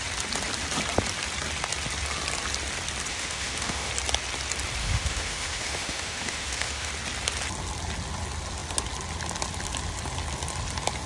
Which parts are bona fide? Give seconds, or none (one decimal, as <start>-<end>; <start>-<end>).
0.0-3.1; 3.9-4.8; 6.9-11.1